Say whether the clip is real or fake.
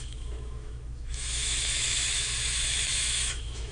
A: fake